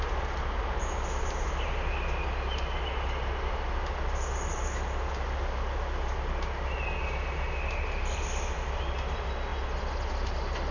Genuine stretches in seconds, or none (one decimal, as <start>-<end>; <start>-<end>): 0.0-10.7